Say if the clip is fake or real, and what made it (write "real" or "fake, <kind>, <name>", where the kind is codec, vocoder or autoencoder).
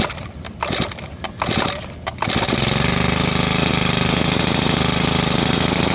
real